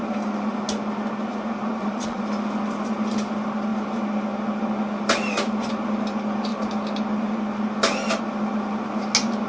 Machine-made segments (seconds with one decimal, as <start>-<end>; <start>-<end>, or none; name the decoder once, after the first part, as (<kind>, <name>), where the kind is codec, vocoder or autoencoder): 1.7-2.2 (vocoder, Vocos)